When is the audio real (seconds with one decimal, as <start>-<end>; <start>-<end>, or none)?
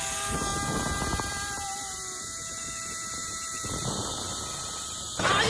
0.0-5.5